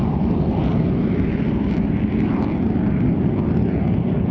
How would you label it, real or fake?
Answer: real